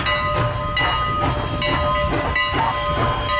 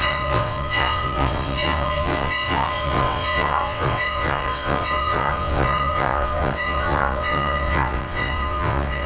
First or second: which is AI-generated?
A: second